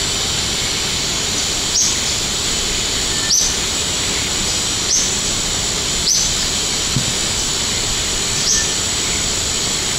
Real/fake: real